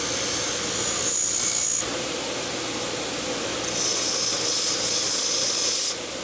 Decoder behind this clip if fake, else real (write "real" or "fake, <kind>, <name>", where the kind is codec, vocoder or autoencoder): real